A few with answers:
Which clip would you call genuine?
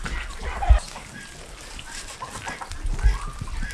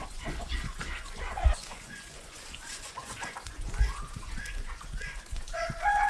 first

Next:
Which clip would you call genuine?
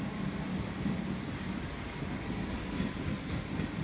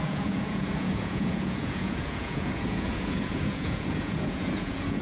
first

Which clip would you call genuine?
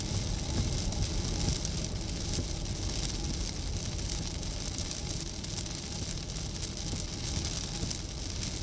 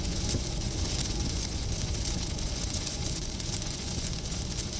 first